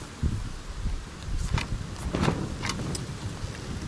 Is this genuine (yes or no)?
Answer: no